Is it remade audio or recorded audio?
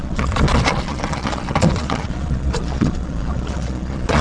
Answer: remade